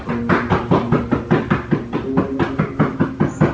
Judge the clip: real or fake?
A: real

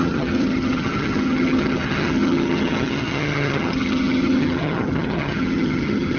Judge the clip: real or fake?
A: fake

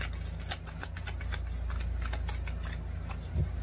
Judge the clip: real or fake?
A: real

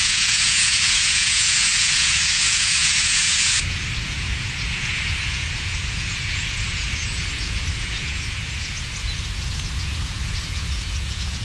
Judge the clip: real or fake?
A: fake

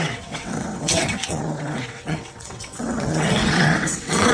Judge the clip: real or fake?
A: fake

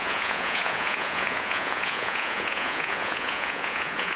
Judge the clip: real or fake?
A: fake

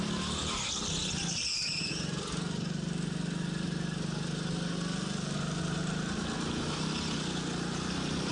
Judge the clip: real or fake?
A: real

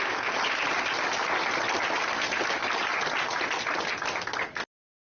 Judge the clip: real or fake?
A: real